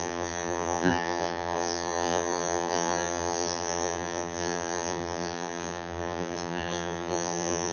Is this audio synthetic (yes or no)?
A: yes